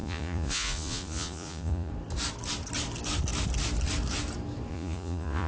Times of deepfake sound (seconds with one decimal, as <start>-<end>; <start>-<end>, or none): 0.0-1.9; 4.7-5.5